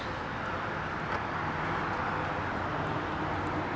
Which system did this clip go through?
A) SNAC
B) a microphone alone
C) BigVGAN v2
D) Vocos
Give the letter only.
B